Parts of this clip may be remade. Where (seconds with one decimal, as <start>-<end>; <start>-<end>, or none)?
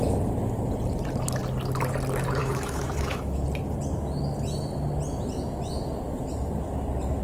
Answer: 2.4-3.4